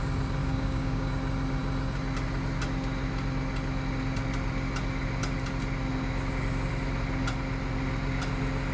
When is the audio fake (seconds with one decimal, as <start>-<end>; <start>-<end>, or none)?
0.4-1.1